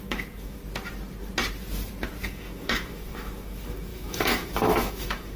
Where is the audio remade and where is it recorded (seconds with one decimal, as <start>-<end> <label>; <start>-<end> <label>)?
0.0-0.6 remade; 0.6-2.3 recorded; 2.3-5.4 remade